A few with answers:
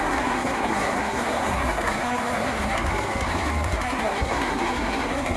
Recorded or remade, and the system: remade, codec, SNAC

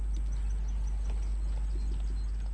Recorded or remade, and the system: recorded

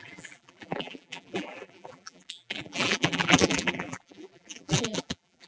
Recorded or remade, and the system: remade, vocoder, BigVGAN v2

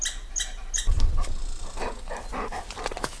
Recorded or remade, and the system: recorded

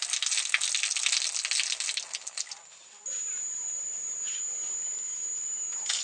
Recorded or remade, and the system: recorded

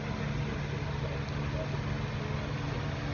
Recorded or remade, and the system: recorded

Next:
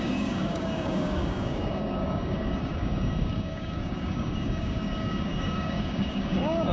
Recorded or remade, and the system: remade, codec, DAC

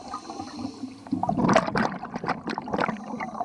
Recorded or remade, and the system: recorded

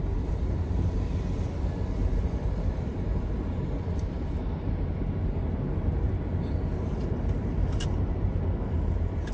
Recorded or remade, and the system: recorded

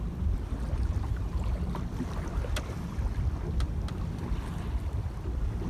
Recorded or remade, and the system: recorded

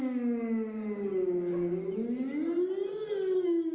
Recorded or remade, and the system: recorded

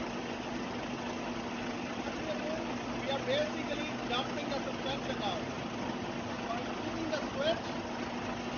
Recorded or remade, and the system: recorded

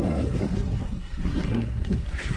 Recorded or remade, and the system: remade, codec, SNAC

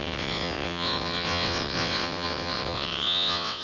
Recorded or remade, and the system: remade, vocoder, WaveNeXt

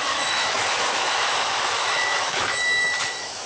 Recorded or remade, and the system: remade, autoencoder, DAC-VAE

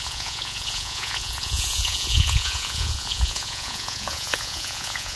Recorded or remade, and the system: remade, vocoder, Vocos